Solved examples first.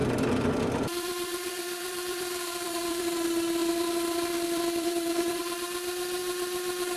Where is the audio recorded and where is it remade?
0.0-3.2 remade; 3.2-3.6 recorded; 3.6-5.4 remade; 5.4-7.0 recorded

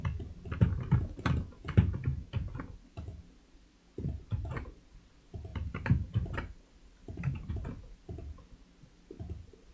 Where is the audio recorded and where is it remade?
0.0-5.5 recorded; 5.5-7.5 remade; 7.5-9.7 recorded

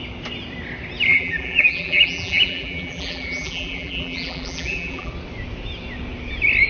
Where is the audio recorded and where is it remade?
0.0-1.1 recorded; 1.1-5.1 remade; 5.1-6.7 recorded

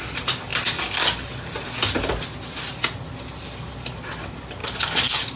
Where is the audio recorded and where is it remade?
0.0-4.6 recorded; 4.6-5.4 remade

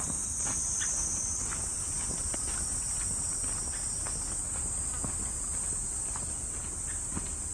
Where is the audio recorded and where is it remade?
0.0-1.4 recorded; 1.4-3.4 remade; 3.4-5.3 recorded; 5.3-6.2 remade; 6.2-7.5 recorded

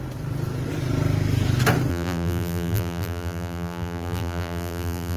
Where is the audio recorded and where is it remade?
0.0-1.9 recorded; 1.9-5.2 remade

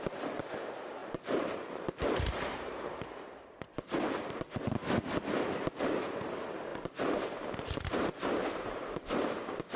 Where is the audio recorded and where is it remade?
0.0-4.8 remade; 4.8-5.8 recorded; 5.8-9.8 remade